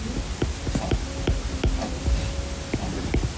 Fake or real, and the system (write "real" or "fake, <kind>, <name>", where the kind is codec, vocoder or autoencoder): real